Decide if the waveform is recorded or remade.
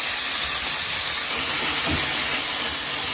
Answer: recorded